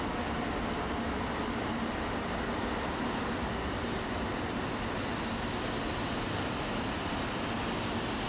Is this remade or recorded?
recorded